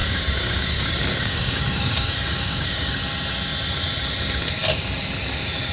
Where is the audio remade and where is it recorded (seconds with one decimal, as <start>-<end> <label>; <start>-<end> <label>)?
0.0-2.9 remade; 2.9-5.7 recorded